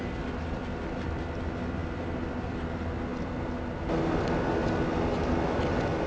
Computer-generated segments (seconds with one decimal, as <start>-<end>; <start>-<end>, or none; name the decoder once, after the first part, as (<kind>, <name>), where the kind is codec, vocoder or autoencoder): none